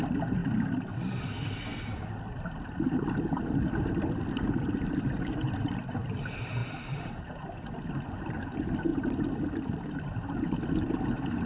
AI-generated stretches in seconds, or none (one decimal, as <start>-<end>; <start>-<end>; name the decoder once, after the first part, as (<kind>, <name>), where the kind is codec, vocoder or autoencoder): none